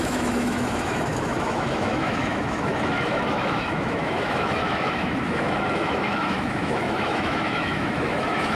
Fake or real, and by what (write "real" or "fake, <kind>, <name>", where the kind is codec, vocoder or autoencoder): fake, autoencoder, DAC-VAE